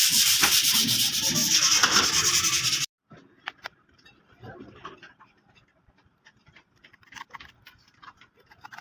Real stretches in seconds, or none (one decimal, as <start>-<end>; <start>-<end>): 1.4-3.5